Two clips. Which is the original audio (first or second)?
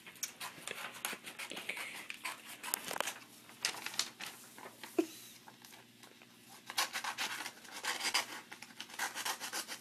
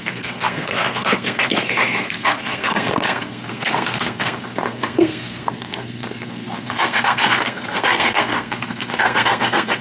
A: first